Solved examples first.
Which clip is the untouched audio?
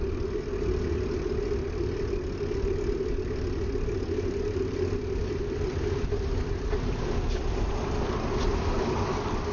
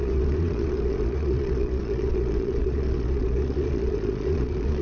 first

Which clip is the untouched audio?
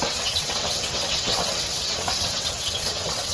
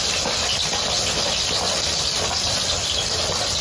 second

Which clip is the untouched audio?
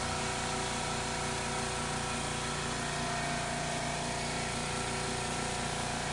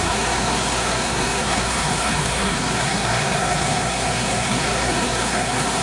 first